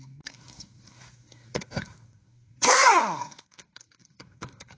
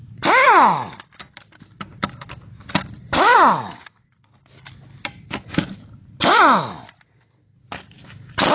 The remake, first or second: first